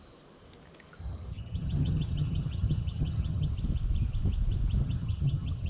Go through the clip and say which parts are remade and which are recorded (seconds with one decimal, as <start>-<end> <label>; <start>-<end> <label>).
0.0-1.0 recorded; 1.0-3.5 remade; 3.5-4.8 recorded; 4.8-5.7 remade